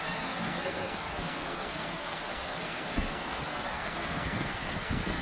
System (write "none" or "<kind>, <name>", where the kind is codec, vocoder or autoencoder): codec, SNAC